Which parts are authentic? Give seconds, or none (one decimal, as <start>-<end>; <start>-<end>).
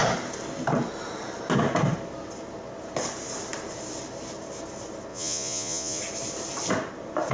0.0-5.1; 6.0-7.3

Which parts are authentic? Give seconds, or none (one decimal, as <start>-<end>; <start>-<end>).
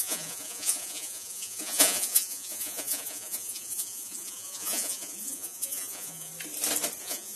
6.3-7.0